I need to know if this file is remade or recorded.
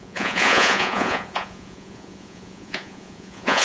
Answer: remade